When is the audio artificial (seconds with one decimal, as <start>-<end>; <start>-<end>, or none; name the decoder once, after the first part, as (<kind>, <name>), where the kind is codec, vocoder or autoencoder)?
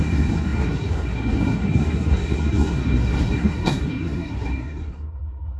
0.0-5.6 (codec, SNAC)